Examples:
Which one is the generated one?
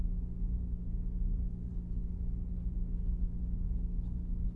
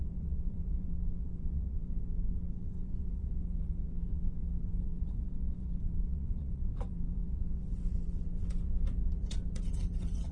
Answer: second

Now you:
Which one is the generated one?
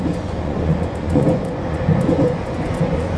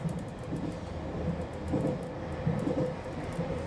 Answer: first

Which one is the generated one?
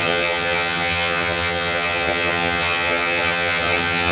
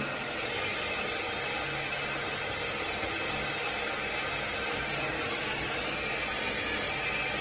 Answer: first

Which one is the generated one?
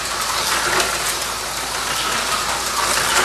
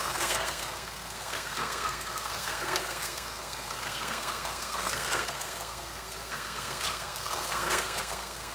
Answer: second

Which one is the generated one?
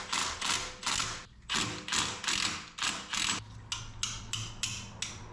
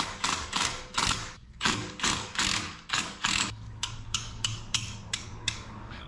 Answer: second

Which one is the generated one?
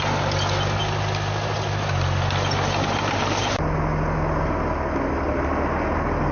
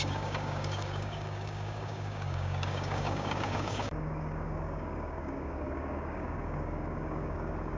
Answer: second